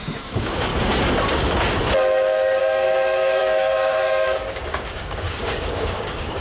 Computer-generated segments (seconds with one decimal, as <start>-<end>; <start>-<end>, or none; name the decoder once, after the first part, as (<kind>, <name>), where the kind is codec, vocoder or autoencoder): 0.0-0.7 (codec, DAC); 2.6-6.4